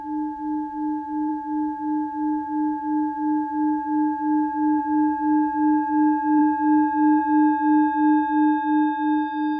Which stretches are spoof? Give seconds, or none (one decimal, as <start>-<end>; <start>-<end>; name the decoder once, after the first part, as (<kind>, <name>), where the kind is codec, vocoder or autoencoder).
none